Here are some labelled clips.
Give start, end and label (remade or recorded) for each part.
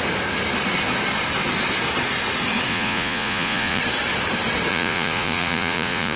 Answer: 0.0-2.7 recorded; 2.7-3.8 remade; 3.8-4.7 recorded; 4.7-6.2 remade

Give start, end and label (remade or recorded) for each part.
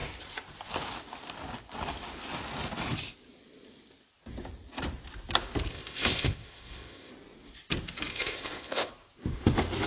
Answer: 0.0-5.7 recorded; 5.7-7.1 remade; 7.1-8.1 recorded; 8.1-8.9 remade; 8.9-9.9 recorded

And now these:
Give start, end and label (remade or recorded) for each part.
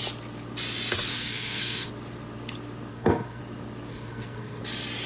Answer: 0.0-1.1 recorded; 1.1-1.9 remade; 1.9-2.9 recorded; 2.9-3.4 remade; 3.4-3.9 recorded; 3.9-4.6 remade; 4.6-5.1 recorded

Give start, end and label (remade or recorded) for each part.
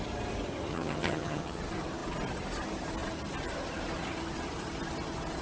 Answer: 0.0-0.7 recorded; 0.7-1.6 remade; 1.6-5.4 recorded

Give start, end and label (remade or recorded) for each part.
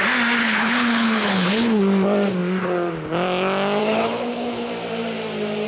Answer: 0.0-0.4 recorded; 0.4-1.8 remade; 1.8-3.8 recorded; 3.8-4.7 remade; 4.7-5.7 recorded